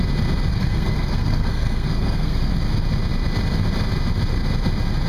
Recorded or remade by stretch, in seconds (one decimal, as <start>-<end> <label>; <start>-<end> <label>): 0.0-0.5 recorded; 0.5-2.5 remade; 2.5-5.1 recorded